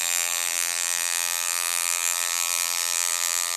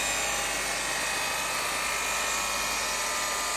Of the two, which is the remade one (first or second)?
first